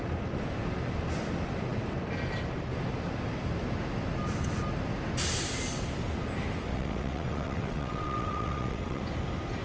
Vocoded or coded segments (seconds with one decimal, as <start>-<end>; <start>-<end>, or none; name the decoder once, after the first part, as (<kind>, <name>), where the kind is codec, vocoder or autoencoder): 6.7-9.0 (vocoder, WaveNeXt)